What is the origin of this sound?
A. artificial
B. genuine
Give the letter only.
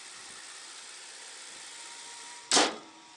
B